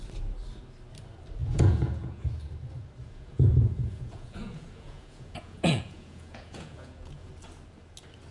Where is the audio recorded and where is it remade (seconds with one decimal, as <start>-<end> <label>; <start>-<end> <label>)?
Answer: 0.0-1.4 recorded; 1.4-2.3 remade; 2.3-3.0 recorded; 3.0-7.3 remade; 7.3-8.3 recorded